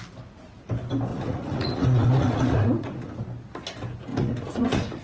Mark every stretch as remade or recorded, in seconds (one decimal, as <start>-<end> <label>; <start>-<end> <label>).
0.0-1.1 recorded; 1.1-3.2 remade; 3.2-4.1 recorded; 4.1-5.0 remade